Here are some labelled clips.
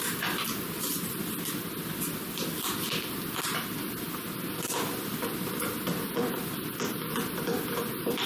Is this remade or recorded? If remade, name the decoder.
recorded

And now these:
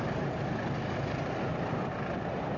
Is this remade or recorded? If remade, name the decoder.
recorded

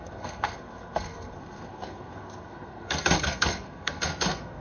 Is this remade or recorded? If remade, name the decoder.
remade, codec, SNAC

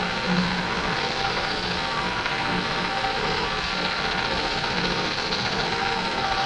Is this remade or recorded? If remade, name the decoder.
remade, codec, SNAC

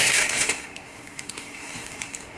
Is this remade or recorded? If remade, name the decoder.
remade, codec, SNAC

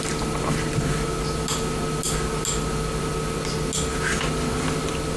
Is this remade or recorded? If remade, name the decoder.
recorded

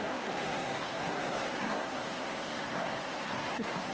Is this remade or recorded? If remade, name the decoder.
remade, codec, SNAC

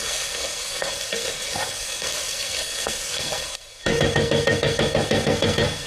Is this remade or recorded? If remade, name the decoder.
remade, codec, SNAC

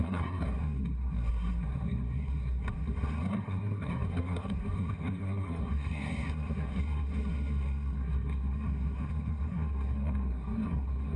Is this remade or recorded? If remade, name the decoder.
remade, codec, SNAC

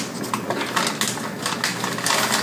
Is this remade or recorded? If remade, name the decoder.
recorded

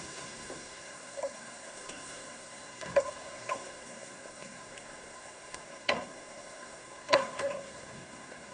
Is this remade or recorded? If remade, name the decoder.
remade, codec, SNAC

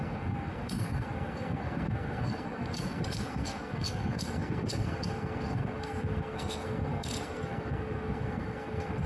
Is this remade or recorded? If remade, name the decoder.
remade, codec, SNAC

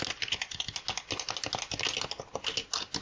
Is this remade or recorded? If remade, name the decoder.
recorded